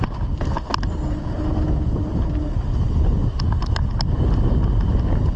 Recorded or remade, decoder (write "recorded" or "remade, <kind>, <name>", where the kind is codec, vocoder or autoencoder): recorded